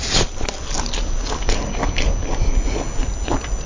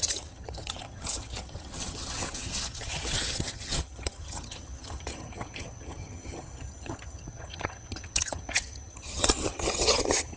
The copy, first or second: second